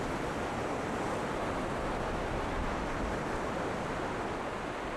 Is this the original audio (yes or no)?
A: yes